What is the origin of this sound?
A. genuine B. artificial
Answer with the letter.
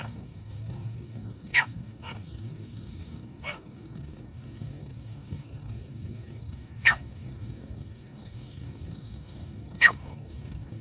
B